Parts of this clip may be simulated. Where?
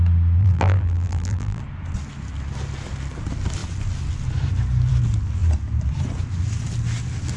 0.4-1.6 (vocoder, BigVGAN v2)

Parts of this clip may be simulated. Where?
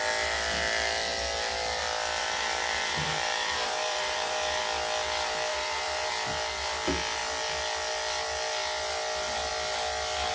2.2-4.6 (vocoder, BigVGAN v2); 5.5-6.1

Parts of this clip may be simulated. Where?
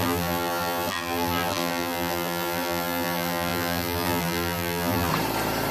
0.0-5.1 (vocoder, BigVGAN v2)